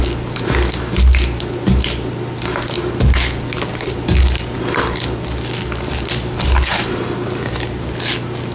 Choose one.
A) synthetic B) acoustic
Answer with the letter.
B